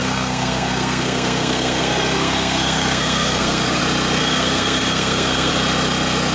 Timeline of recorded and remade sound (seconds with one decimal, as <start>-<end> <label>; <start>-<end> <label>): 0.0-3.8 remade; 3.8-4.2 recorded; 4.2-5.5 remade; 5.5-6.3 recorded